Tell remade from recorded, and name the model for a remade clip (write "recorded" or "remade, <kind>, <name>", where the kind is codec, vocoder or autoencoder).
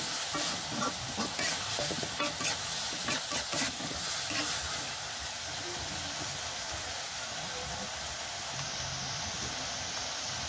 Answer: recorded